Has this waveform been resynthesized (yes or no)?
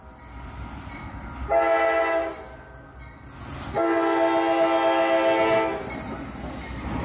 no